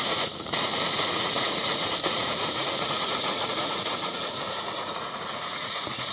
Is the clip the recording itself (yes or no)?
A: no